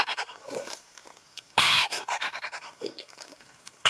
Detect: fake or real fake